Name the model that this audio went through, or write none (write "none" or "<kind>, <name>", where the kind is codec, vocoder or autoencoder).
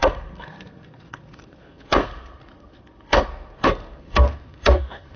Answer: codec, SNAC